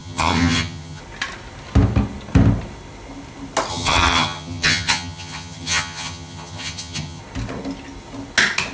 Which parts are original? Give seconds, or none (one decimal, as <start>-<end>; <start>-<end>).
1.0-3.7; 7.2-8.7